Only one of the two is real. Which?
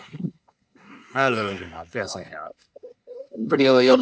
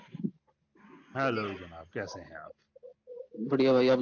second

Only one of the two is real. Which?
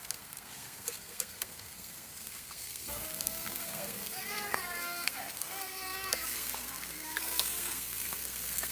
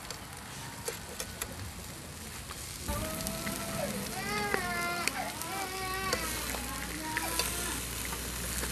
second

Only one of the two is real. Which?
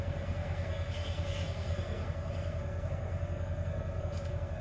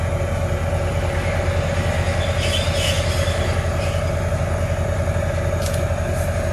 second